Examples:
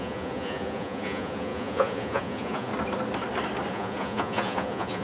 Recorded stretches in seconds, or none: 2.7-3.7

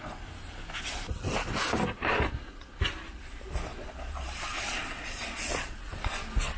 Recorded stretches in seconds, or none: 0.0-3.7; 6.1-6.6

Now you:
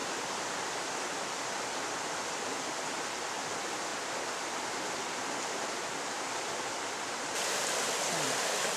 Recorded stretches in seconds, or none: 0.5-8.8